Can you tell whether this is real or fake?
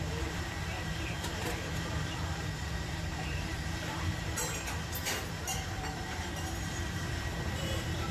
fake